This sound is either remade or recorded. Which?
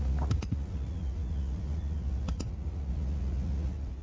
remade